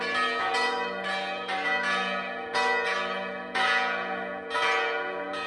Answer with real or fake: real